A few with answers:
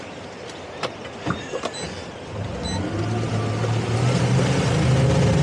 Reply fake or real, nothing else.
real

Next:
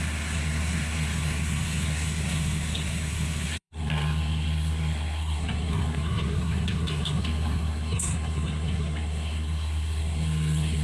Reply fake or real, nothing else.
fake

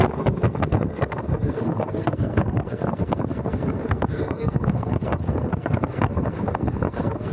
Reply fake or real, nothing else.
fake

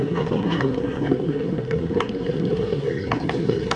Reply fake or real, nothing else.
fake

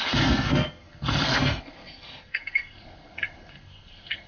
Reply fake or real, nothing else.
fake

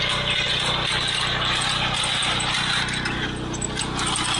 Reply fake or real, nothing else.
real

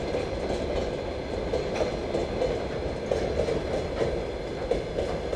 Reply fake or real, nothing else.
real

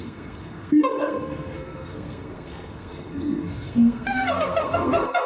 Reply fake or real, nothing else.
fake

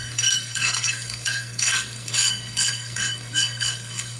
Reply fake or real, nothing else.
fake